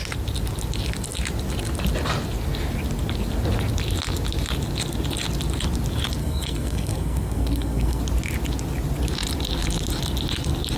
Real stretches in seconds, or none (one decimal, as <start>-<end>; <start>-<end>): 0.0-6.2; 8.0-10.8